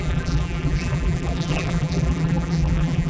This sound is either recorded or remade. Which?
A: remade